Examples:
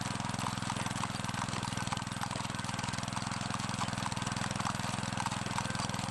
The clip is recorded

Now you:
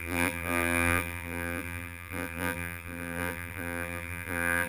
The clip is remade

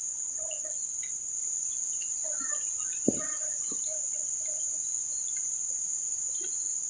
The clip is recorded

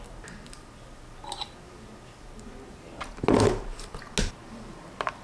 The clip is recorded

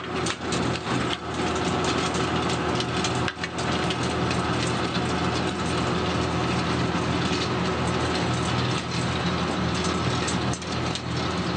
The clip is recorded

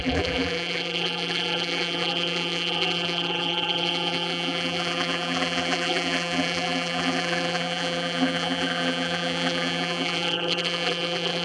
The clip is remade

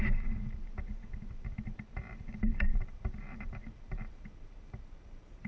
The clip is remade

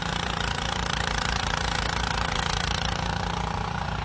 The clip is remade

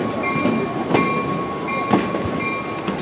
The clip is recorded